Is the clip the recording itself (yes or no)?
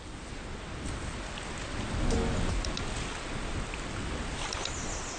yes